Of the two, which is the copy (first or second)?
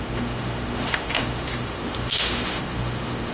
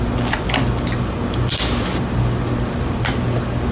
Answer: first